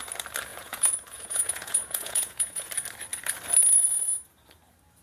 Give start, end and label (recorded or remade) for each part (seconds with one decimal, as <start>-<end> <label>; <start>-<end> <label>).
0.0-0.5 recorded; 0.5-2.7 remade; 2.7-5.0 recorded